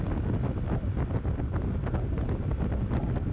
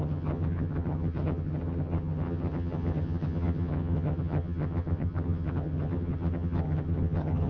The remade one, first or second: second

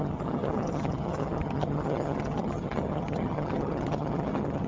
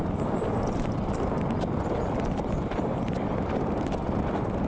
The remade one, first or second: first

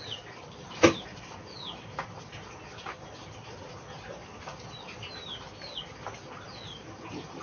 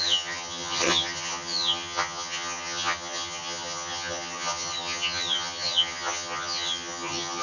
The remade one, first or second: second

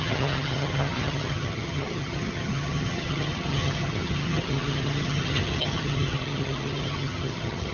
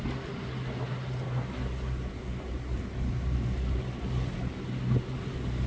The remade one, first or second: first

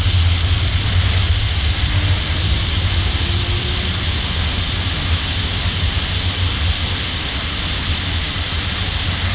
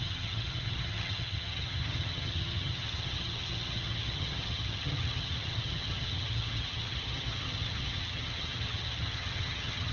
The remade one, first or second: second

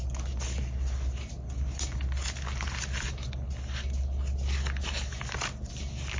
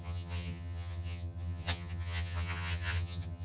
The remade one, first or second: second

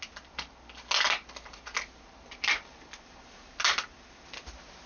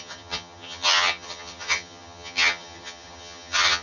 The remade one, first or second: second